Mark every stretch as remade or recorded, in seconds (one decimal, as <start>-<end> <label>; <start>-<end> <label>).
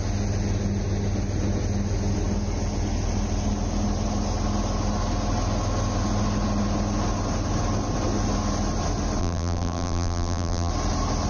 0.0-9.2 recorded; 9.2-10.7 remade; 10.7-11.3 recorded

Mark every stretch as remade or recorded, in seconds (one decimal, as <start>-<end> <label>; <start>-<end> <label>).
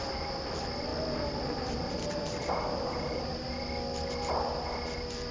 0.0-5.3 recorded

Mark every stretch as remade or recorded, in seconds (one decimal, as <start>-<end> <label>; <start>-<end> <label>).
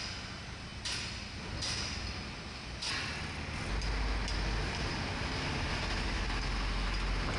0.0-7.4 recorded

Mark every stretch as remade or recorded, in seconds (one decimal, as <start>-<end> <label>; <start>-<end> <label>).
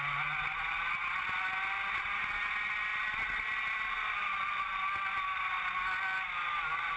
0.0-7.0 recorded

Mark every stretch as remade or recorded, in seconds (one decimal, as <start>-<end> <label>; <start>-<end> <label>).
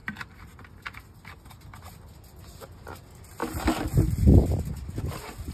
0.0-5.5 recorded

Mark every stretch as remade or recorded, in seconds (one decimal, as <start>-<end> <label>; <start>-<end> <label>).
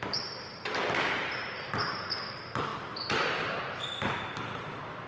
0.0-2.7 remade; 2.7-3.4 recorded; 3.4-5.1 remade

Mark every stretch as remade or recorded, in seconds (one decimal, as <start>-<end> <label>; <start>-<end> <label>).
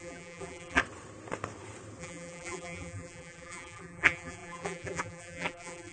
0.0-0.8 remade; 0.8-2.0 recorded; 2.0-5.9 remade